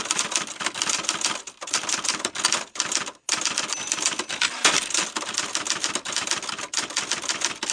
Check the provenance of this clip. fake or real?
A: real